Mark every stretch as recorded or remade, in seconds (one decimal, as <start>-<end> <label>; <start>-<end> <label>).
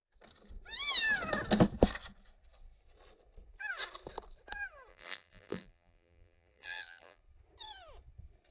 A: 0.0-4.9 recorded; 4.9-7.2 remade; 7.2-8.5 recorded